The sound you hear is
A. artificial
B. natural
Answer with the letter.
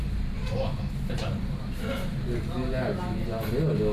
B